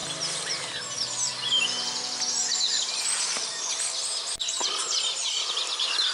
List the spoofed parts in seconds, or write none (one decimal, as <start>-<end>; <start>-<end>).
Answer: 0.0-0.6